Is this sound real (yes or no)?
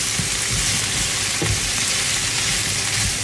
yes